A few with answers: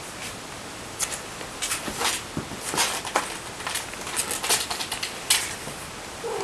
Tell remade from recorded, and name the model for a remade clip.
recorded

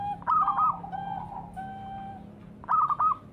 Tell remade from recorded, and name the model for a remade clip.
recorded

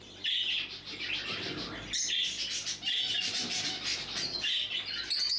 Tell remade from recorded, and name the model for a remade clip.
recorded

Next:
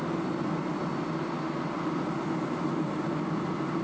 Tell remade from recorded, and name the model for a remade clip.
recorded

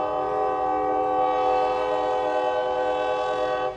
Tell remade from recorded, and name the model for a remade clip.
recorded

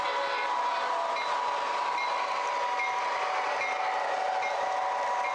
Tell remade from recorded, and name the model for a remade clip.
recorded